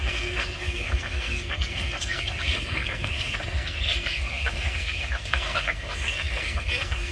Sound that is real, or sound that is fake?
fake